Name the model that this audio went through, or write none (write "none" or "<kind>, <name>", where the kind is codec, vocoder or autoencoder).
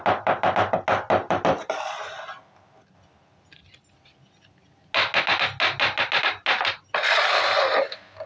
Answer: none